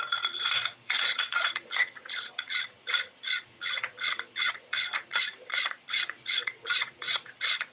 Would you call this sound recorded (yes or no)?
no